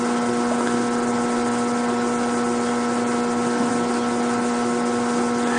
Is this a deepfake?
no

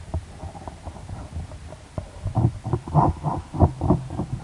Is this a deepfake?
no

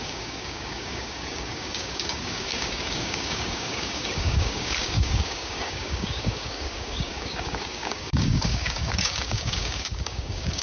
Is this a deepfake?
yes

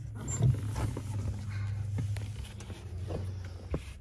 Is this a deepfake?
no